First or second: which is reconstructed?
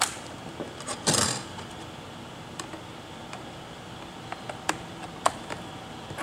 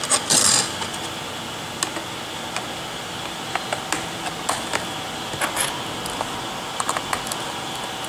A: first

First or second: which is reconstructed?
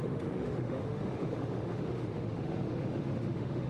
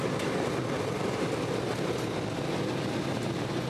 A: first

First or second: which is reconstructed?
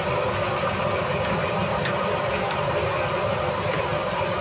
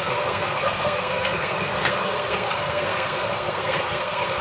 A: second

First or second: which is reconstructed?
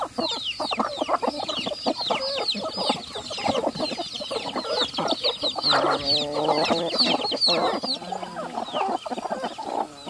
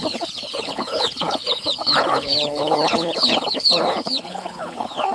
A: second